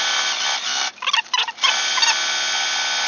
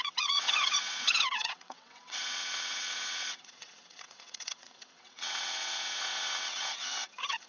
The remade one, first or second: second